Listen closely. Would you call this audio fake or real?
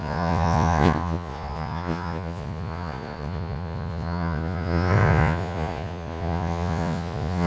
fake